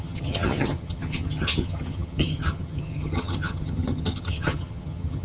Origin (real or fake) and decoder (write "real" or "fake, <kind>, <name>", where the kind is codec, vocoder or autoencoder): fake, vocoder, HiFi-GAN